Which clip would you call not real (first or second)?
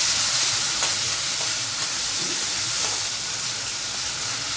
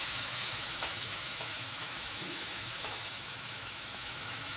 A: second